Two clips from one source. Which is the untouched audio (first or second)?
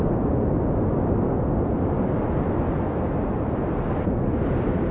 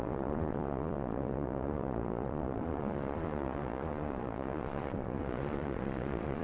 first